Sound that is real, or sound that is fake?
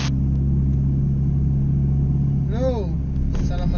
real